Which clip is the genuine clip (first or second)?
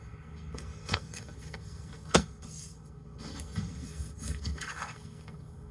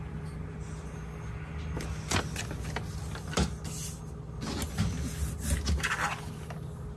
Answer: second